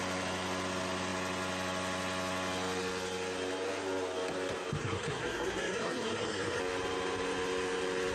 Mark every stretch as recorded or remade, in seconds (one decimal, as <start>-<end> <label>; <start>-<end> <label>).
0.0-4.8 recorded; 4.8-6.6 remade; 6.6-8.1 recorded